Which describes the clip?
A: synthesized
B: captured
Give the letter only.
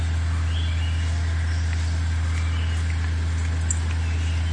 B